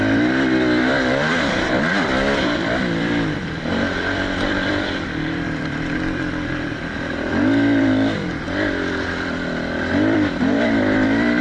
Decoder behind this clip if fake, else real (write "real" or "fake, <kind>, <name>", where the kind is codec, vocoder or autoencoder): fake, vocoder, BigVGAN v2